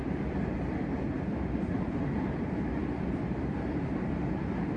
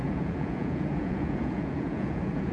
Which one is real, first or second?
first